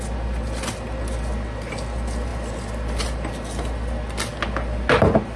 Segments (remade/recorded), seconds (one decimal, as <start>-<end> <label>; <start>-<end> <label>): 0.0-5.4 recorded